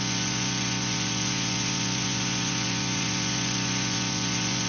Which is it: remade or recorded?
remade